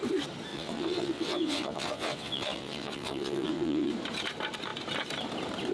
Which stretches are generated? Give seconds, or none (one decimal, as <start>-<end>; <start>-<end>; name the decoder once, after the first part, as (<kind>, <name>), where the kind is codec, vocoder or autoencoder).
0.5-3.9 (vocoder, WaveNeXt)